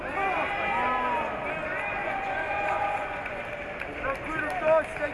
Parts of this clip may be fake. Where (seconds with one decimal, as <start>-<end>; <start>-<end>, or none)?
2.0-3.4

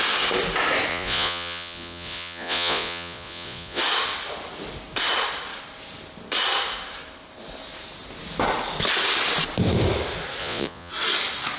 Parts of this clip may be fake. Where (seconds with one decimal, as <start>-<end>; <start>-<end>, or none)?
0.9-3.8; 10.4-10.9